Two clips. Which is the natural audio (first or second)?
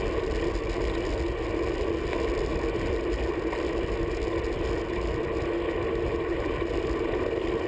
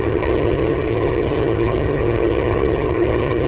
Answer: first